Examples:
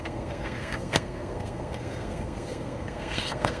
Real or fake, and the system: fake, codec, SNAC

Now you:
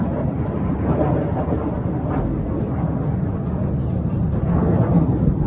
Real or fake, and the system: real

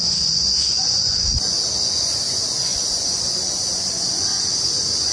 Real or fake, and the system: fake, vocoder, Vocos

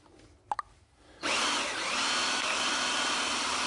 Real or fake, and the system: real